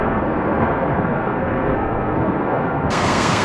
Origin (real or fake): fake